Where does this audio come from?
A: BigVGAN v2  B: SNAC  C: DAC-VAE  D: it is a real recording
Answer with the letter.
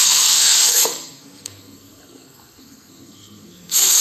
B